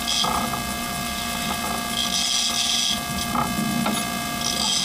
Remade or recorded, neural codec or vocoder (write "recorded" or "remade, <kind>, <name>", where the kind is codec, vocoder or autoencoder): recorded